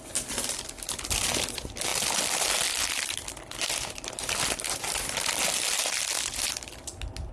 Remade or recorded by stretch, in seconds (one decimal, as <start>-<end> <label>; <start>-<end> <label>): 0.0-7.3 recorded